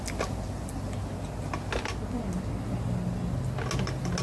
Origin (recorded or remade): recorded